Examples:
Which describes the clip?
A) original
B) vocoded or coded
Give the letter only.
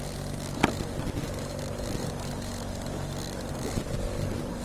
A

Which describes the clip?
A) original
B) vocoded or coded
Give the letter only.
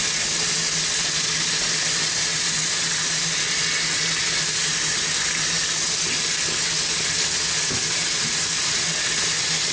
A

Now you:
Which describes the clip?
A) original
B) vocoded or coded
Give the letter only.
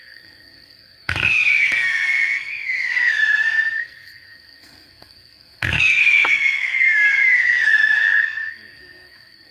B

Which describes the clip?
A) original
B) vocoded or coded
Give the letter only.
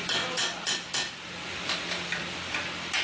A